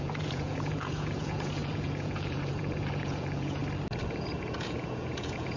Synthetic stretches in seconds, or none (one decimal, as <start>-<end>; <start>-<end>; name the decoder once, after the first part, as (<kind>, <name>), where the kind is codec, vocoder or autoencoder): 0.0-3.6 (vocoder, Vocos); 4.1-5.6